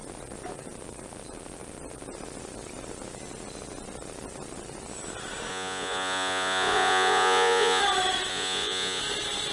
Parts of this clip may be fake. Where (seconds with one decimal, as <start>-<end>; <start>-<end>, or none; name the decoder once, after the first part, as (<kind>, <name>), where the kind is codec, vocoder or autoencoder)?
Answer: 5.5-7.8 (vocoder, Vocos); 8.3-9.0